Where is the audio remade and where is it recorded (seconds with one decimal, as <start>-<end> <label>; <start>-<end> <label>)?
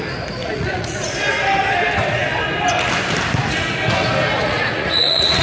0.0-0.4 recorded; 0.4-1.1 remade; 1.1-4.4 recorded; 4.4-5.4 remade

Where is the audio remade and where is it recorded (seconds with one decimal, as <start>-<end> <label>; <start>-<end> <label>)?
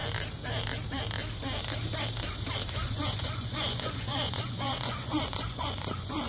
0.0-2.7 recorded; 2.7-6.3 remade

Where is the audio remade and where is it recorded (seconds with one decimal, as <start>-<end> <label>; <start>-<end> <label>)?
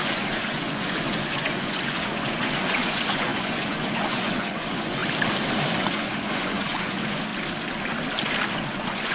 0.0-5.0 remade; 5.0-5.8 recorded; 5.8-7.3 remade; 7.3-8.5 recorded; 8.5-9.1 remade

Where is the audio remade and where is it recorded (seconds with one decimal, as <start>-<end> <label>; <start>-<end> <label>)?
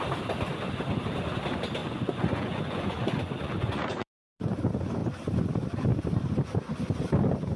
0.0-1.8 recorded; 1.8-4.6 remade; 4.6-7.6 recorded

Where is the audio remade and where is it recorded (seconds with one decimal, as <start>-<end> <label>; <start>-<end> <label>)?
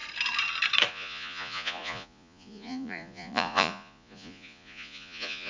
0.0-0.9 recorded; 0.9-5.5 remade